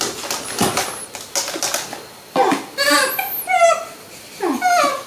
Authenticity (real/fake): real